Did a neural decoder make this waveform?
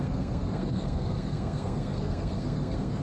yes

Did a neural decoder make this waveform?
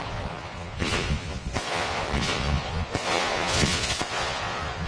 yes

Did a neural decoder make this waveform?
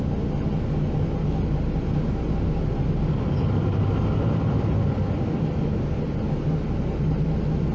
no